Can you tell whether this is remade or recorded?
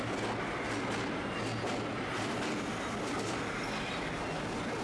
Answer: recorded